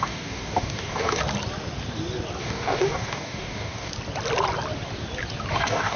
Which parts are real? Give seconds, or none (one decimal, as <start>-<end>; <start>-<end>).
1.2-2.4; 3.9-5.5